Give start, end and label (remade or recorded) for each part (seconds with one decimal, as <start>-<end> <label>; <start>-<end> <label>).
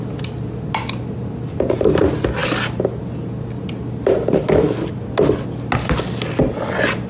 0.0-7.1 recorded